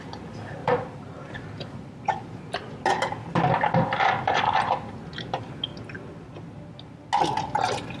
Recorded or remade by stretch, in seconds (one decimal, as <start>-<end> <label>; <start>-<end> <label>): 0.0-0.6 recorded; 0.6-2.4 remade; 2.4-8.0 recorded